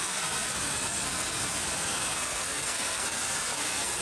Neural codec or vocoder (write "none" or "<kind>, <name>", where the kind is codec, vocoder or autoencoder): codec, SNAC